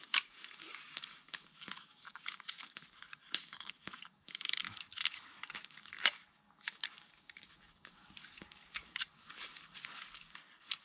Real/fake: fake